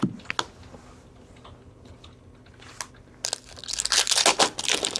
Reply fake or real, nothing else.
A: real